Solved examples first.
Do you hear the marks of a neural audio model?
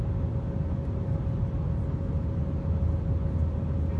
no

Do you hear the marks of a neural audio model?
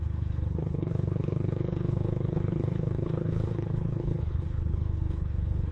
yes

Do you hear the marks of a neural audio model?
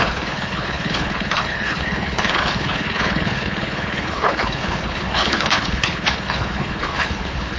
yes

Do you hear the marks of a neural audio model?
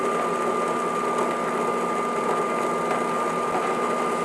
no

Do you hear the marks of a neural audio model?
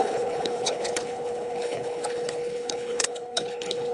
yes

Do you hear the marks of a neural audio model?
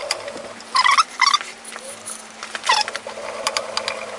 no